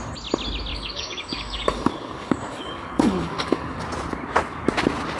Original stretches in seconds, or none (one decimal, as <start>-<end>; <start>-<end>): 0.0-0.7; 3.8-5.2